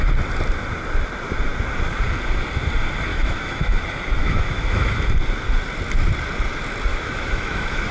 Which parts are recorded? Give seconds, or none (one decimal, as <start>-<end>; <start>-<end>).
0.0-3.1; 3.8-4.2; 4.9-6.9